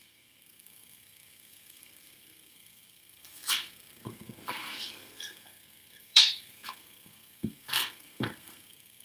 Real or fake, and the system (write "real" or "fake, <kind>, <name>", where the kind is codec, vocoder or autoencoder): fake, codec, SNAC